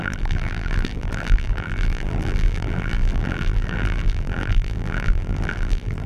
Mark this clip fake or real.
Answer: fake